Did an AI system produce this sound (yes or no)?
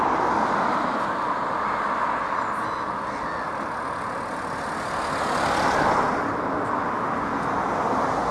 no